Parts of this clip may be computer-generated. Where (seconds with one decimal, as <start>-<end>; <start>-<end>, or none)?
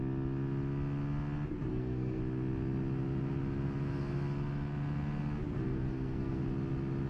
1.7-2.2; 5.7-6.4